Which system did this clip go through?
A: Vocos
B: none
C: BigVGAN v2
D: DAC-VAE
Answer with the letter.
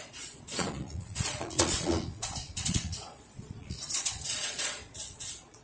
A